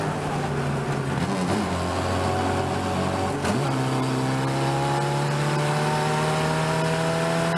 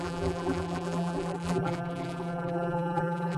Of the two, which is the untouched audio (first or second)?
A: first